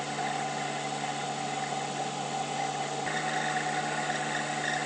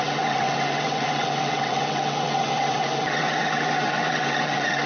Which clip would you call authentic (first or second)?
first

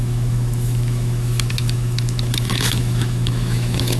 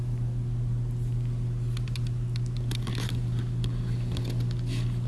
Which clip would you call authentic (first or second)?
second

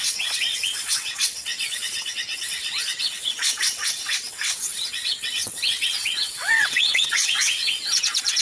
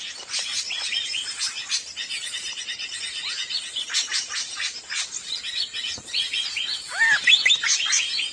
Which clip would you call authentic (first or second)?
second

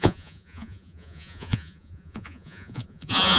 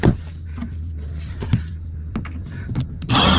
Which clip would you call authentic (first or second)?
second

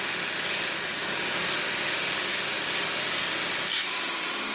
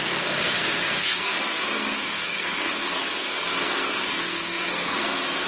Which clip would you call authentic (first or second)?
first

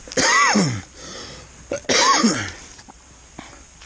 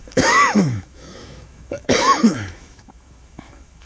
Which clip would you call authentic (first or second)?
first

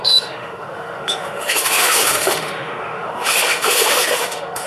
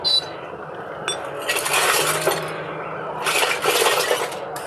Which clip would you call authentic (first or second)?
second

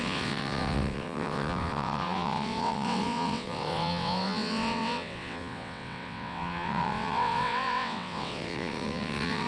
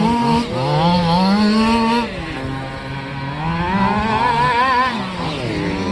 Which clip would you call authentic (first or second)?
second